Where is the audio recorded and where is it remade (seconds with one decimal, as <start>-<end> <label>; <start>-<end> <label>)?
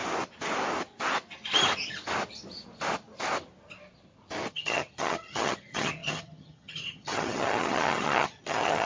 0.0-4.5 recorded; 4.5-8.9 remade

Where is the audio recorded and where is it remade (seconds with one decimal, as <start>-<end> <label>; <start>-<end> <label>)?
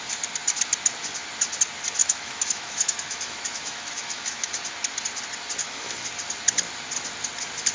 0.0-2.0 recorded; 2.0-4.5 remade; 4.5-5.6 recorded; 5.6-6.1 remade; 6.1-7.7 recorded